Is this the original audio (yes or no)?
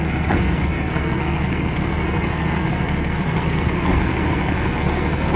no